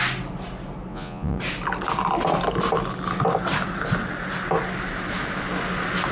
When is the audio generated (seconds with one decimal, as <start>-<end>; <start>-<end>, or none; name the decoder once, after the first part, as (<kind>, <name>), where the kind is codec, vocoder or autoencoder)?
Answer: 0.9-1.4 (vocoder, Vocos)